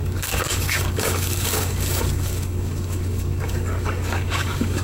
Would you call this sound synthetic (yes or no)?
yes